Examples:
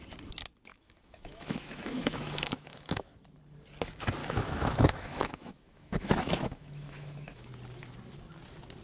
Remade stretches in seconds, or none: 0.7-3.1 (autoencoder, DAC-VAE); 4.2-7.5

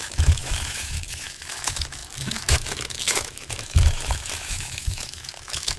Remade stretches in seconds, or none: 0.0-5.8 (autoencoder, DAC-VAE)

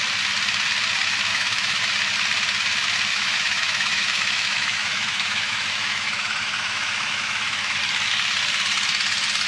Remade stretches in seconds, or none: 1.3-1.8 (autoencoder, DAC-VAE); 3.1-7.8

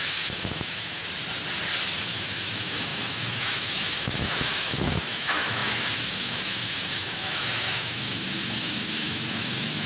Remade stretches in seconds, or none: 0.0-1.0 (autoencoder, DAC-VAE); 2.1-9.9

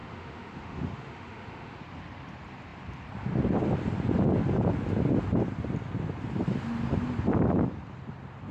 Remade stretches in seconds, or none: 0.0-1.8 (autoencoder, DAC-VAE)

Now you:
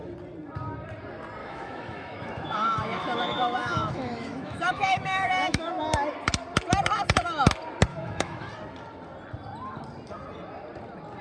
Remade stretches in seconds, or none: 1.4-5.8 (autoencoder, DAC-VAE); 7.9-8.5

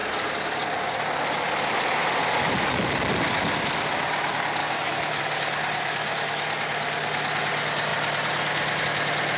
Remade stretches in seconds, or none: 4.6-5.2 (autoencoder, DAC-VAE)

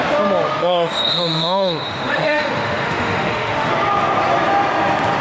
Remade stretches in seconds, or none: 0.6-3.7 (autoencoder, DAC-VAE)